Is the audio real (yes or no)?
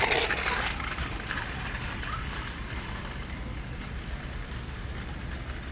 yes